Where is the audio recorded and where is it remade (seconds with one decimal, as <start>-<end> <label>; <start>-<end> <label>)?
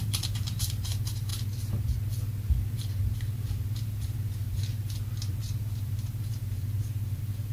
0.0-1.3 remade; 1.3-2.7 recorded; 2.7-4.6 remade; 4.6-5.3 recorded; 5.3-7.5 remade